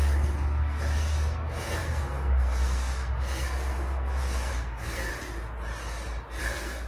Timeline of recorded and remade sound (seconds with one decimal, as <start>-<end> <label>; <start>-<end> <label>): 0.0-5.1 remade; 5.1-6.4 recorded; 6.4-6.9 remade